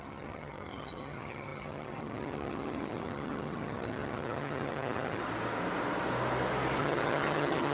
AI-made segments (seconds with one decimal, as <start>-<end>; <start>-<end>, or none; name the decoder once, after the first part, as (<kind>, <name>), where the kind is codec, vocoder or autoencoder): 0.0-5.2 (vocoder, HiFi-GAN); 6.8-7.7